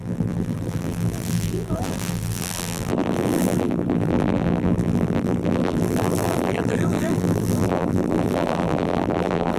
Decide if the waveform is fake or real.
fake